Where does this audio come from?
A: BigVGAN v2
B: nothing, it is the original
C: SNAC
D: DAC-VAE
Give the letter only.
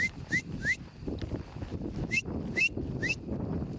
B